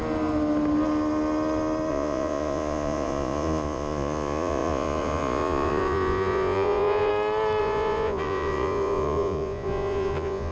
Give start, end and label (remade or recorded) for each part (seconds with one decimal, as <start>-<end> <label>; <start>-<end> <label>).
0.0-1.9 recorded; 1.9-7.1 remade; 7.1-7.6 recorded; 7.6-10.5 remade